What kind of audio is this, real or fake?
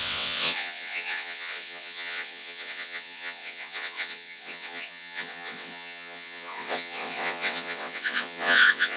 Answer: fake